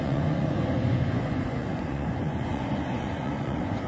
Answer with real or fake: fake